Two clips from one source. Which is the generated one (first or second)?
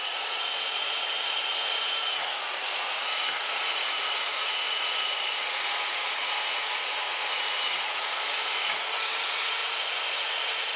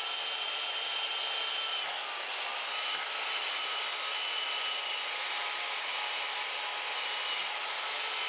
first